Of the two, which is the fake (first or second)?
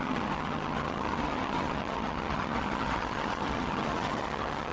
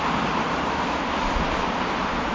first